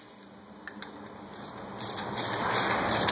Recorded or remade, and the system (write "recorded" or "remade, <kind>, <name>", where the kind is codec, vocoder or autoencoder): recorded